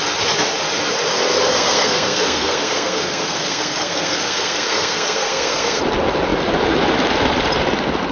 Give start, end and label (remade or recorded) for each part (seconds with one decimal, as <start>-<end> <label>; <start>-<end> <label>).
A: 0.0-1.5 recorded; 1.5-5.8 remade; 5.8-8.1 recorded